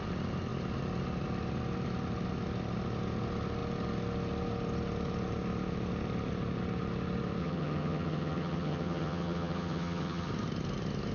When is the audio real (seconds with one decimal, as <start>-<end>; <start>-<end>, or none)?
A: 0.0-7.4; 10.3-11.1